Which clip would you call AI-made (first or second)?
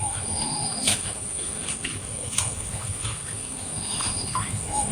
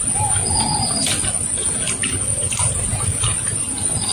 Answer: first